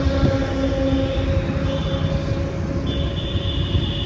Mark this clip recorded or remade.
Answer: recorded